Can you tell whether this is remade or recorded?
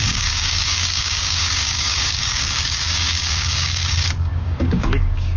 remade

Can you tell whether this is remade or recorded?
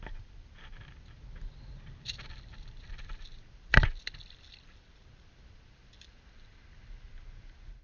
recorded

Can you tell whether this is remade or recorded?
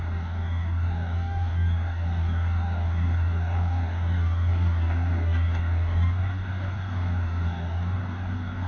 remade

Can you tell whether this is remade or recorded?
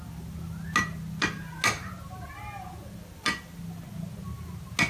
recorded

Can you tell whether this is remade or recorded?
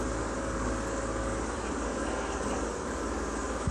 remade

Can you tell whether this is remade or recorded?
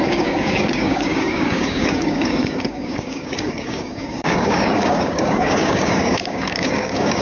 remade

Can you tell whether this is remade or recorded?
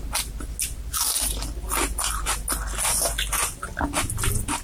recorded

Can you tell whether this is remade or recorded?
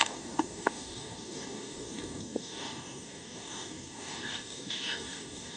remade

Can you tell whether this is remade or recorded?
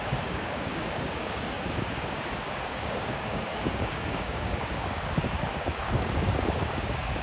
remade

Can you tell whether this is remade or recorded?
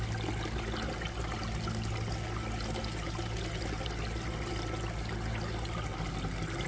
recorded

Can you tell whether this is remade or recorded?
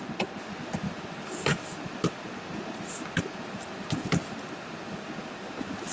recorded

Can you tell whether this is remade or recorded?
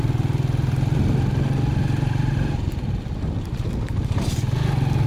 recorded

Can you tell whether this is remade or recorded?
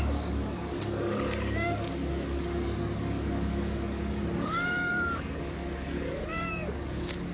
remade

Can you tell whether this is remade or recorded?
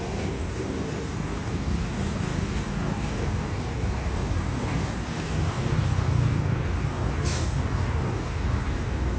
remade